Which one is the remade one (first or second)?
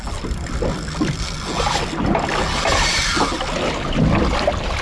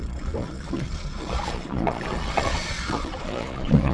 second